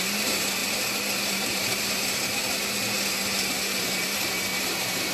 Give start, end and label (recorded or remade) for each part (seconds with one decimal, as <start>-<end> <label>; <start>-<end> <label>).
0.0-0.6 remade; 0.6-1.3 recorded; 1.3-2.4 remade; 2.4-3.8 recorded; 3.8-5.1 remade